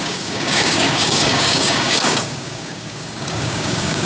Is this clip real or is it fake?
fake